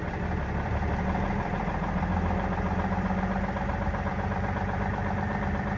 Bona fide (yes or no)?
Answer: no